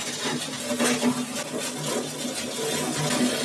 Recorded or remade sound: recorded